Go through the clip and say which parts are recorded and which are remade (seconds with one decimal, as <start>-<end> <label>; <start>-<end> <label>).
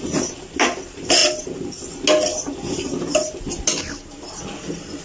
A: 0.0-5.0 recorded